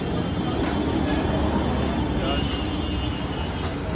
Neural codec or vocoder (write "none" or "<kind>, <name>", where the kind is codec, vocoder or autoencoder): none